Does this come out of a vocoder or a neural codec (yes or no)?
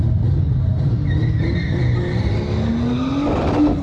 no